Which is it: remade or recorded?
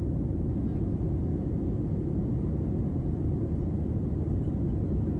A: recorded